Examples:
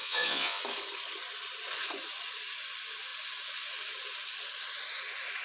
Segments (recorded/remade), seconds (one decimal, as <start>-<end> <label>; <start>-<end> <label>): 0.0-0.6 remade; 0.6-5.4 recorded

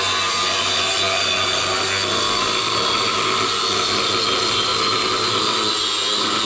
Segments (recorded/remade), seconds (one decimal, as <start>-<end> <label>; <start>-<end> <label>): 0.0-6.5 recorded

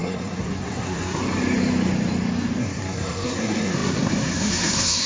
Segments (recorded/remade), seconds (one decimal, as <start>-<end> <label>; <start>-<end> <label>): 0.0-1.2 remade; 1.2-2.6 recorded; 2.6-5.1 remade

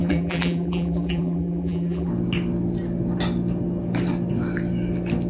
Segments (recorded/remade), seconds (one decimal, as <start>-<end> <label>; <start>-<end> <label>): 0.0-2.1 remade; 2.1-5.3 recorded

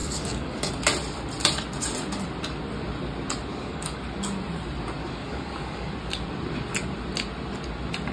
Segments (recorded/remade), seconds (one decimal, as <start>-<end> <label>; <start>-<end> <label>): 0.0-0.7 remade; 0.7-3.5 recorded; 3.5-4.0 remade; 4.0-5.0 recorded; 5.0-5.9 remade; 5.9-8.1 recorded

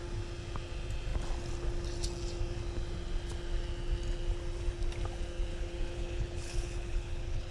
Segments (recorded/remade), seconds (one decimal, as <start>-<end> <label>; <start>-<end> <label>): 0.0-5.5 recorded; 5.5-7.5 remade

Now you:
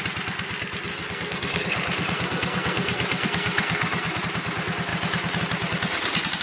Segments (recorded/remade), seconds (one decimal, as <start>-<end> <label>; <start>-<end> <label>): 0.0-0.9 recorded; 0.9-4.2 remade; 4.2-6.4 recorded

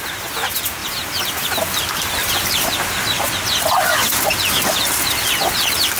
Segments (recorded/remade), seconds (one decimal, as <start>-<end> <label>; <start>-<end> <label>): 0.0-0.8 recorded; 0.8-1.5 remade; 1.5-2.2 recorded; 2.2-6.0 remade